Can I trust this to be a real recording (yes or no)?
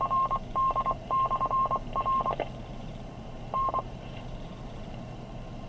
no